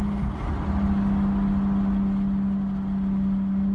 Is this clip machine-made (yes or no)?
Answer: no